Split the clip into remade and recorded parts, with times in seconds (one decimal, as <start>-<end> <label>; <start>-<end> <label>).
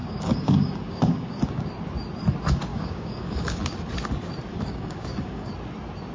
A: 0.0-1.7 remade; 1.7-2.7 recorded; 2.7-3.6 remade; 3.6-4.5 recorded; 4.5-5.5 remade; 5.5-6.1 recorded